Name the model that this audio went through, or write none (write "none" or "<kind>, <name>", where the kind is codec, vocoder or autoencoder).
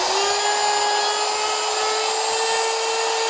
none